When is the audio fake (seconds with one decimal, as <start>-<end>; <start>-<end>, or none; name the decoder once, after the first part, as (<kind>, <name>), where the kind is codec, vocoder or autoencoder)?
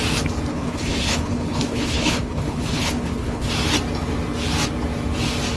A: 0.5-3.5 (codec, HILCodec)